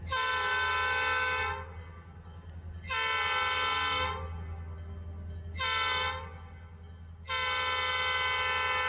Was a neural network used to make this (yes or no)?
no